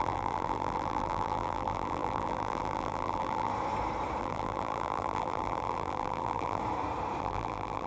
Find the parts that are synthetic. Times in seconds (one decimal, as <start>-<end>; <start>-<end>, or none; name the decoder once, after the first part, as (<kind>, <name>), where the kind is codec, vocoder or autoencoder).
0.0-3.5 (vocoder, BigVGAN v2); 4.2-6.6; 7.2-7.9